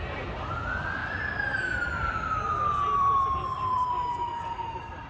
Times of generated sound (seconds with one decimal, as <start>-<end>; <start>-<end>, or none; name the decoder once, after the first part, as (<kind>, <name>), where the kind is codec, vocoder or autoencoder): 1.0-4.1 (vocoder, BigVGAN v2)